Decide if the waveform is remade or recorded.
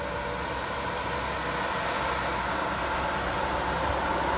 recorded